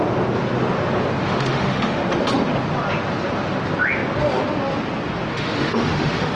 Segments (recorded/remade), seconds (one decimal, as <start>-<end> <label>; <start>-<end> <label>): 0.0-1.2 recorded; 1.2-2.0 remade; 2.0-5.3 recorded; 5.3-6.3 remade